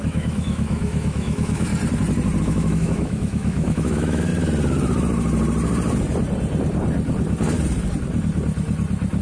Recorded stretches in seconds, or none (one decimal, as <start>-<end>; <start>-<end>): 1.7-2.4; 4.3-9.2